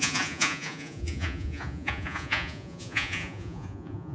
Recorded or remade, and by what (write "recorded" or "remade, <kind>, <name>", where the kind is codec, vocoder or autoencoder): remade, vocoder, Vocos